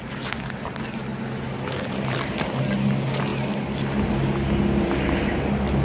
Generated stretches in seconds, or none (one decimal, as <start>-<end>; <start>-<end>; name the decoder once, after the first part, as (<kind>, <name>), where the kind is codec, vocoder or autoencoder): 1.1-1.8 (vocoder, BigVGAN v2)